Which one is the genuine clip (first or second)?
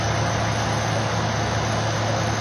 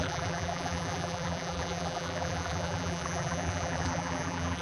first